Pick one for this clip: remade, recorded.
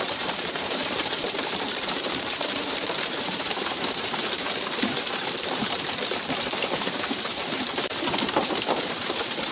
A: remade